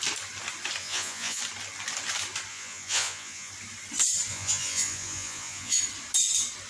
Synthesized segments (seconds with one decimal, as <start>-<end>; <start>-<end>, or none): 0.8-1.4; 2.5-3.5; 4.3-5.8